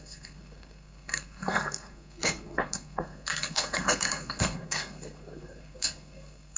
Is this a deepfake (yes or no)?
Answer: yes